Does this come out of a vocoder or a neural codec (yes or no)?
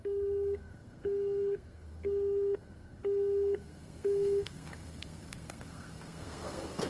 yes